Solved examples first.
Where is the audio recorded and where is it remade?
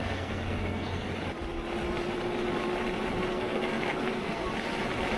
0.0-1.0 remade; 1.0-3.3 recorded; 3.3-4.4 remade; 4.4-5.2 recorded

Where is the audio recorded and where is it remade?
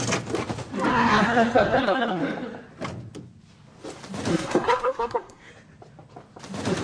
0.0-0.9 recorded; 0.9-2.2 remade; 2.2-4.3 recorded; 4.3-5.5 remade; 5.5-6.8 recorded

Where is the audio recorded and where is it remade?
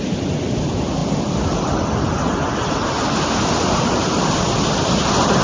0.0-5.4 recorded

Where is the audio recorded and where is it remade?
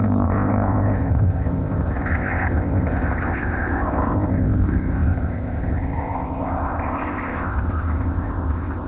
0.0-8.9 remade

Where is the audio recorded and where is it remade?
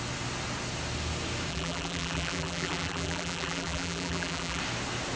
0.0-1.5 recorded; 1.5-4.6 remade; 4.6-5.2 recorded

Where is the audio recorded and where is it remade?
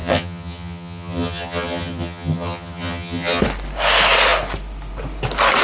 0.0-3.4 remade; 3.4-5.6 recorded